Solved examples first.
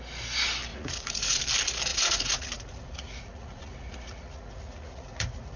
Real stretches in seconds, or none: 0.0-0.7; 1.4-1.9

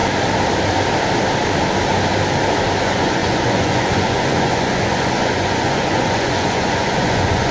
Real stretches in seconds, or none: 0.0-2.8

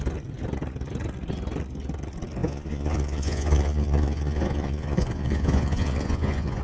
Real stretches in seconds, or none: 0.0-2.4

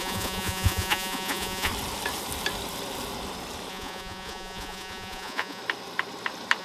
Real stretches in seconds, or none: 1.7-3.7; 5.6-6.6